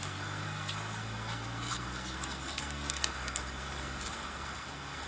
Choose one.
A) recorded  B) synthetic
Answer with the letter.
B